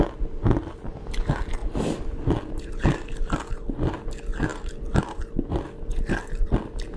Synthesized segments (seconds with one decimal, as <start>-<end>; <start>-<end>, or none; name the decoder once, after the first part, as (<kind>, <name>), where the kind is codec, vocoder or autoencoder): 1.6-3.5 (vocoder, BigVGAN v2); 4.5-5.0; 5.9-7.0